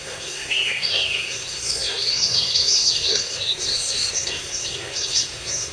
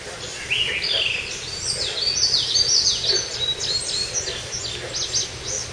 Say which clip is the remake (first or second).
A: first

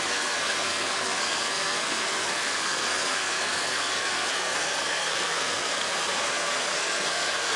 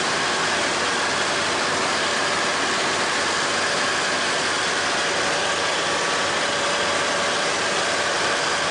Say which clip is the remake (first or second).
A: first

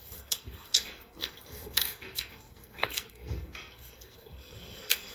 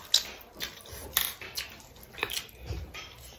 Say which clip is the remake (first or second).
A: first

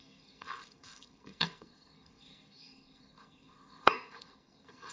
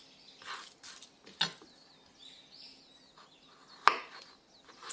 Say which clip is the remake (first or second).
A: first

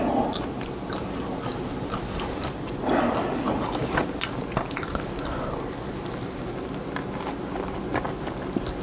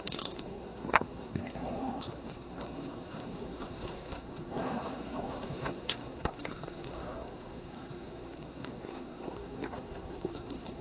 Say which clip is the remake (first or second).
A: second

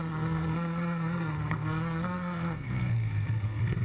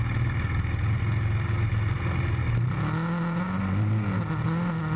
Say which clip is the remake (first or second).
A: first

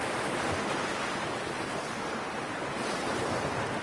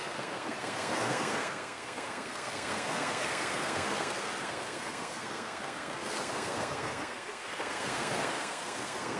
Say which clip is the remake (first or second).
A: second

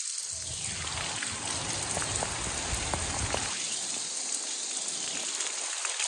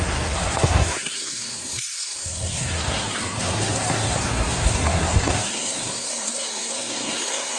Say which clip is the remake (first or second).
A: second